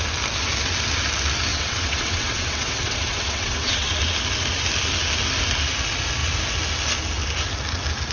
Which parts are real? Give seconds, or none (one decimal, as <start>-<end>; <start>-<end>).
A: 0.0-1.5; 3.9-8.1